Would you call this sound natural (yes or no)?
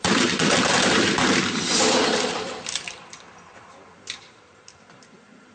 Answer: no